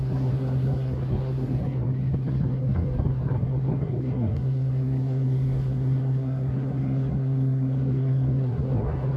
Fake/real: fake